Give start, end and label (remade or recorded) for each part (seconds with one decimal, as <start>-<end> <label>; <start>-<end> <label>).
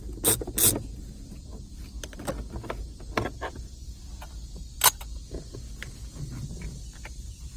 0.0-7.6 recorded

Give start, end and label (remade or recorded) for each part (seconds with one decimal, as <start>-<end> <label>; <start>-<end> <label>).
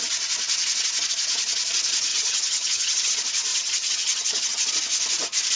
0.0-2.1 recorded; 2.1-3.1 remade; 3.1-3.5 recorded; 3.5-4.7 remade; 4.7-5.6 recorded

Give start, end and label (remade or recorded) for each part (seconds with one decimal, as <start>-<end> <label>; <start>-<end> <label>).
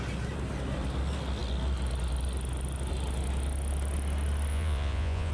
0.0-4.5 recorded; 4.5-5.3 remade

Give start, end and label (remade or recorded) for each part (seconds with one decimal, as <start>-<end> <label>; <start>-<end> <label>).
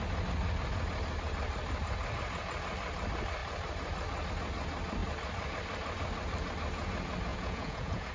0.0-7.3 recorded; 7.3-8.1 remade